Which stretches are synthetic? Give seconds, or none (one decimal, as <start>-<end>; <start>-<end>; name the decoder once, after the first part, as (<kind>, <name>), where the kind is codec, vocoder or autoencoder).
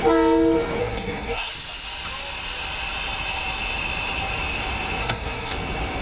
0.8-1.5 (codec, SNAC); 5.0-5.5